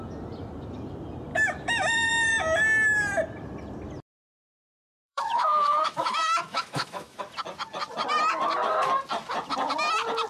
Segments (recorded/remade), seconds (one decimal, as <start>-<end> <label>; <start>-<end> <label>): 0.0-1.3 recorded; 1.3-2.1 remade; 2.1-5.0 recorded; 5.0-7.2 remade; 7.2-10.3 recorded

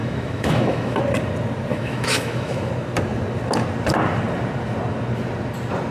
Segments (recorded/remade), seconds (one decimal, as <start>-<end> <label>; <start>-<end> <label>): 0.0-1.0 remade; 1.0-1.7 recorded; 1.7-2.7 remade; 2.7-5.9 recorded

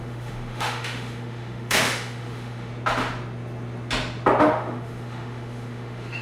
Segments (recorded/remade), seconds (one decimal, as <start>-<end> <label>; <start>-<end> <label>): 0.0-2.7 remade; 2.7-4.4 recorded; 4.4-6.2 remade

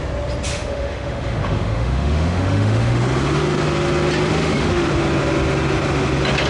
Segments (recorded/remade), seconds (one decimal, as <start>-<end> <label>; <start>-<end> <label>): 0.0-0.5 recorded; 0.5-3.0 remade; 3.0-4.3 recorded; 4.3-4.9 remade; 4.9-6.5 recorded

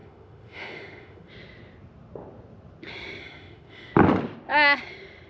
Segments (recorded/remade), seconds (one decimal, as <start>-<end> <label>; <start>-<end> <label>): 0.0-1.3 remade; 1.3-3.2 recorded; 3.2-3.9 remade; 3.9-5.3 recorded

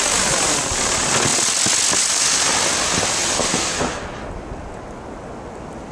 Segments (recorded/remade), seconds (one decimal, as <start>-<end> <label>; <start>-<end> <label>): 0.0-5.9 recorded

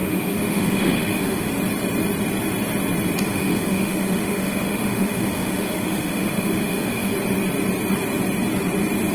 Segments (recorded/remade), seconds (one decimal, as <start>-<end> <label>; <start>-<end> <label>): 0.0-1.5 remade; 1.5-3.3 recorded; 3.3-7.1 remade; 7.1-9.1 recorded